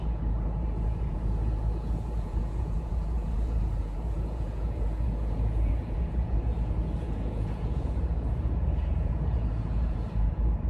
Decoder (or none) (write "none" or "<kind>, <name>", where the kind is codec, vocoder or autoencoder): vocoder, Vocos